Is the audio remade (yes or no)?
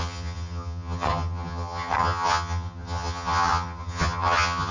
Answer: yes